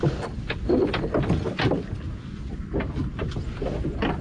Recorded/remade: recorded